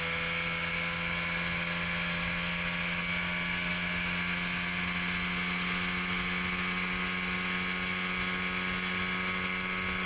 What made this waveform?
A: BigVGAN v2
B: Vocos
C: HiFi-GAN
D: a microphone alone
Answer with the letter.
D